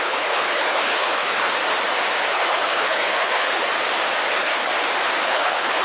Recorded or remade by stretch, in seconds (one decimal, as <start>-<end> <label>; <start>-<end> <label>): 0.0-1.6 remade; 1.6-2.3 recorded; 2.3-3.6 remade; 3.6-4.3 recorded; 4.3-4.7 remade; 4.7-5.2 recorded; 5.2-5.8 remade